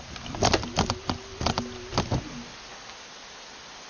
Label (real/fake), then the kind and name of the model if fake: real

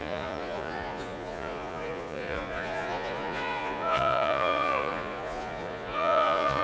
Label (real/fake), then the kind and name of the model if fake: fake, vocoder, Vocos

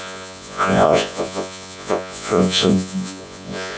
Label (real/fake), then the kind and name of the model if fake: fake, vocoder, Vocos